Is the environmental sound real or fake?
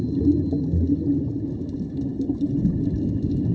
real